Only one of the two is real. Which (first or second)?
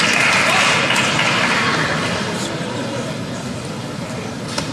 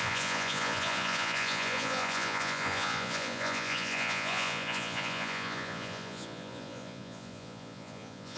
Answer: first